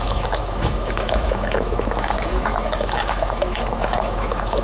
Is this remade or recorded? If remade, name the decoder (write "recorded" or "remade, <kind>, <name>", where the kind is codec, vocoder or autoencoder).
remade, autoencoder, DAC-VAE